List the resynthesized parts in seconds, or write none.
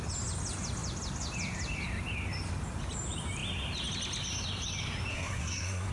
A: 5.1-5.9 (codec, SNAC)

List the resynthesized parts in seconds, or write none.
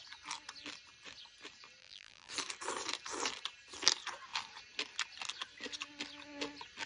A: 1.8-2.3 (vocoder, BigVGAN v2)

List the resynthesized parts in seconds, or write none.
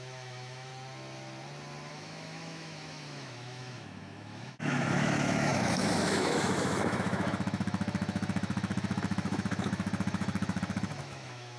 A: 0.0-0.7 (autoencoder, DAC-VAE); 1.9-11.6